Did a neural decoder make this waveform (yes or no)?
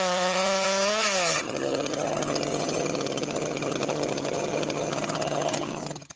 yes